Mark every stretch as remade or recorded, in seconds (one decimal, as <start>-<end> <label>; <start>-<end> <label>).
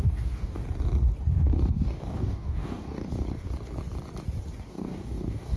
0.0-0.6 remade; 0.6-1.3 recorded; 1.3-3.1 remade; 3.1-4.7 recorded; 4.7-5.6 remade